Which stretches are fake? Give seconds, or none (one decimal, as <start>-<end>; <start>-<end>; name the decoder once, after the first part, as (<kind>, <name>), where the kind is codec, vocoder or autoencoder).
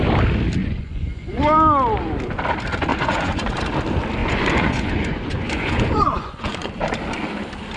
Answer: 0.6-1.4 (vocoder, Vocos); 2.9-3.6; 4.2-6.7